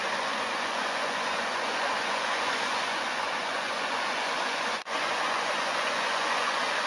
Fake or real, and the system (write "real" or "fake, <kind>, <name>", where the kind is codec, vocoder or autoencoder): fake, vocoder, Vocos